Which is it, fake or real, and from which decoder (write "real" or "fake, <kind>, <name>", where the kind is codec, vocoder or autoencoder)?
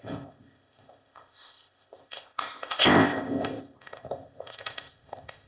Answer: fake, codec, ZipCodec